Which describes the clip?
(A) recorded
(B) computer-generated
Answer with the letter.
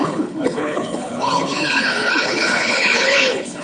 B